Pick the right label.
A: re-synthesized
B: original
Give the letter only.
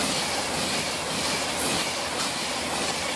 B